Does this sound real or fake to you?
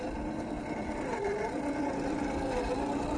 real